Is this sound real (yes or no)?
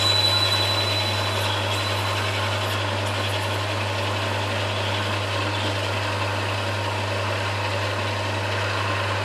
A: yes